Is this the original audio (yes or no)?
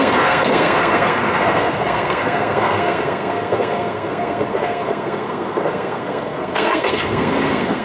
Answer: no